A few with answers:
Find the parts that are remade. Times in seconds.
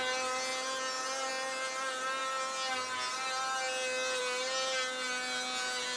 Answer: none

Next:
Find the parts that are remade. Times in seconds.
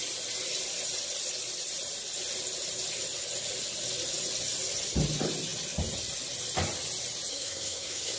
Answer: 7.3-8.2 (codec, SNAC)